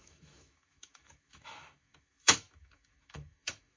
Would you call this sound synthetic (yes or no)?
yes